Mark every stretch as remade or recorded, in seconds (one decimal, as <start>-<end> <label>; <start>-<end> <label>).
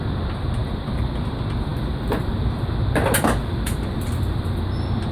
0.0-3.4 recorded; 3.4-4.6 remade; 4.6-5.1 recorded